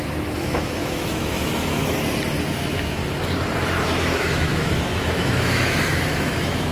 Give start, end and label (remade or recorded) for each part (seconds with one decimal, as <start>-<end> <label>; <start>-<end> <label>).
0.0-1.8 remade; 1.8-2.4 recorded; 2.4-3.0 remade; 3.0-3.8 recorded; 3.8-6.7 remade